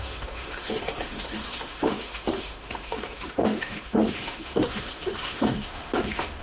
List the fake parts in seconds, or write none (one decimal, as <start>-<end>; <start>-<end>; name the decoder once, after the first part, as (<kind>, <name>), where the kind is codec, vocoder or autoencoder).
0.0-6.4 (autoencoder, DAC-VAE)